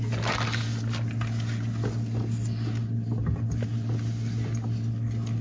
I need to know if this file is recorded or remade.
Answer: recorded